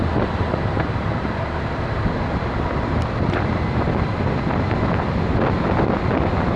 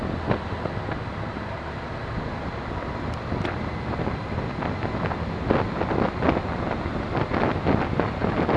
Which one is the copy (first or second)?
first